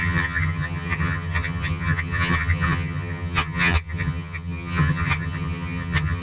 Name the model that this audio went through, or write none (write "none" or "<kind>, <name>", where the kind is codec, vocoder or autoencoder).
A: vocoder, HiFi-GAN